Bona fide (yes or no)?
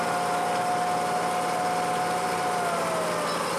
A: yes